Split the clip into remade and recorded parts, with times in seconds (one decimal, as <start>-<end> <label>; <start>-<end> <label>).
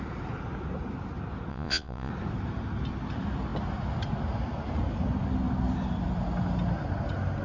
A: 0.0-1.5 recorded; 1.5-2.1 remade; 2.1-7.4 recorded